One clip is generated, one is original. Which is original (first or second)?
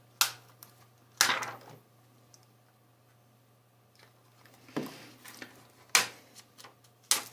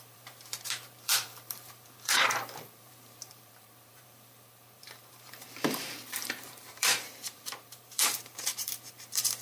first